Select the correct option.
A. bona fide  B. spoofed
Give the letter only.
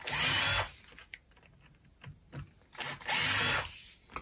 A